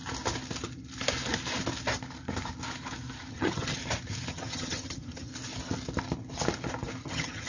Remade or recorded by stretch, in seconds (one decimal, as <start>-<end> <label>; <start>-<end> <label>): 0.0-3.3 recorded; 3.3-3.8 remade; 3.8-4.3 recorded; 4.3-5.3 remade; 5.3-7.0 recorded; 7.0-7.5 remade